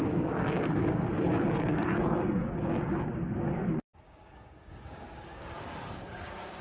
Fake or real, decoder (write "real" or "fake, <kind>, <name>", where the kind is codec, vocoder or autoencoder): fake, codec, DAC